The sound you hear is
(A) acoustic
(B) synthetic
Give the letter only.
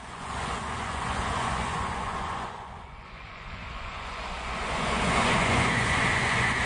B